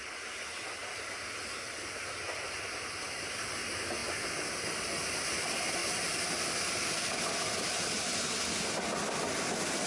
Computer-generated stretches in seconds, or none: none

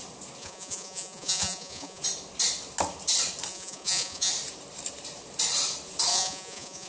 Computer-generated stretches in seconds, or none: 0.4-2.0; 3.5-4.3; 6.1-6.9